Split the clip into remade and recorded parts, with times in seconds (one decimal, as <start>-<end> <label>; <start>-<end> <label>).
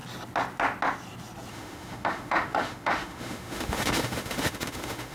0.0-1.5 recorded; 1.5-5.1 remade